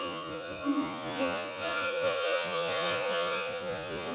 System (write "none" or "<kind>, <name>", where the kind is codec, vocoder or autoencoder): vocoder, Vocos